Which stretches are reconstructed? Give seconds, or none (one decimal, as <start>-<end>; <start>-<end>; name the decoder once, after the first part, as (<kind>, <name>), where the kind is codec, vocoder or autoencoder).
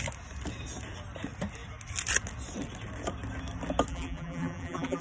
3.9-5.0 (vocoder, BigVGAN v2)